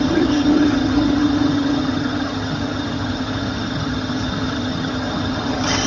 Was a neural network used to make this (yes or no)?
yes